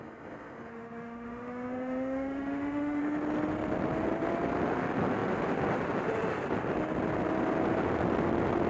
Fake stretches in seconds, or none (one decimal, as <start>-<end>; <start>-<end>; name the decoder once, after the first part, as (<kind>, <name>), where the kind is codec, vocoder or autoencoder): 0.7-3.0 (autoencoder, DAC-VAE)